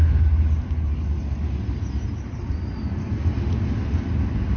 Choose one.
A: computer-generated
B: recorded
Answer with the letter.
B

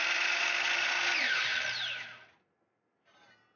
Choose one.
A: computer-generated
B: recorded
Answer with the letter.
B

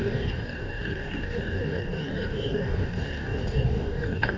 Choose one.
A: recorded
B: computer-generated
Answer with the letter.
B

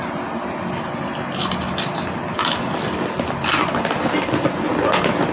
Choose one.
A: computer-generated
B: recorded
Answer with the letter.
B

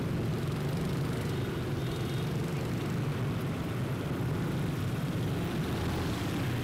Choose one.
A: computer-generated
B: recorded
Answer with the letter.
B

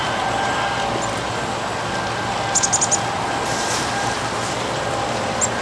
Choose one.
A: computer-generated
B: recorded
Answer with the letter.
B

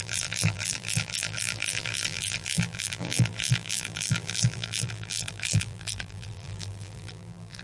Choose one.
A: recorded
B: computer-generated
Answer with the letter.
B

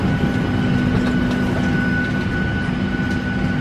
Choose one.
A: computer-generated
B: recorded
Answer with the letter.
B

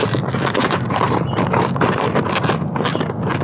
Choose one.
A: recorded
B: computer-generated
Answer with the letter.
A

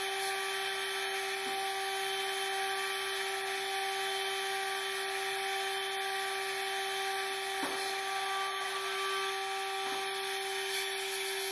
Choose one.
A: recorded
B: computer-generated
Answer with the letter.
A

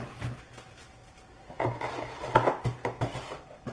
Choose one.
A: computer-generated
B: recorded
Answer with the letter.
B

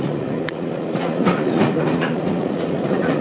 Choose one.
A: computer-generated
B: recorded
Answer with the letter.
A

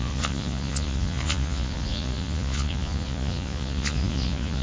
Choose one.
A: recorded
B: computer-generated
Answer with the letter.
B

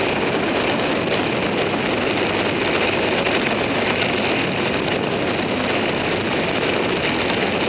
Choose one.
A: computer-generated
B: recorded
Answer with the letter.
B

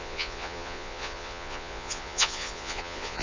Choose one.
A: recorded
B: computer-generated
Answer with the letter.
B